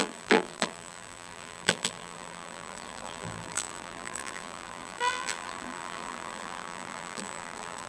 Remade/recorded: remade